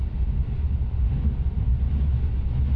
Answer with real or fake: real